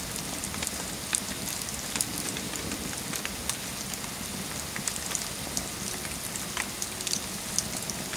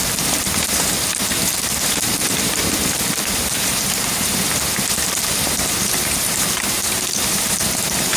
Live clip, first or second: first